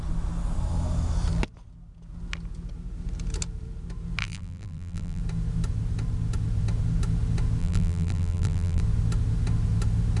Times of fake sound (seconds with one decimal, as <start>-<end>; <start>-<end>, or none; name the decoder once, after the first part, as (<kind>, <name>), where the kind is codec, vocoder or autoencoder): 4.2-5.2 (vocoder, BigVGAN v2); 7.6-8.8